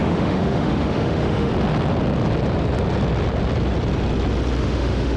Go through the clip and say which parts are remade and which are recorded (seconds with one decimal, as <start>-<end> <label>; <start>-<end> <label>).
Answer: 0.0-1.5 remade; 1.5-4.6 recorded; 4.6-5.2 remade